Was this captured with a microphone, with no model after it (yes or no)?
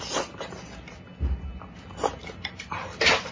yes